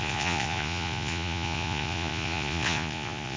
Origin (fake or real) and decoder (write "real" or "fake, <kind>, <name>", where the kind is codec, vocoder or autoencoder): fake, vocoder, Vocos